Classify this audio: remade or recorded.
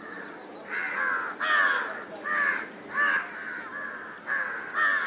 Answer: recorded